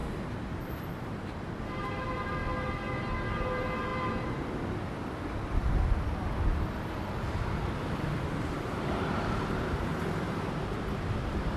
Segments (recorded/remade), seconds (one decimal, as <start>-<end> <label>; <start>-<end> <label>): 0.0-0.6 recorded; 0.6-2.4 remade; 2.4-3.3 recorded; 3.3-3.9 remade; 3.9-8.4 recorded; 8.4-11.6 remade